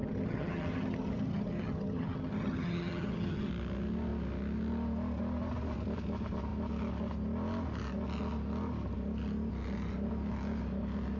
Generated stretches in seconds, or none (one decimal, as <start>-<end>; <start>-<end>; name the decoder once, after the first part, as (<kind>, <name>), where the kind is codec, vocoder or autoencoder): 0.0-3.5 (vocoder, HiFi-GAN)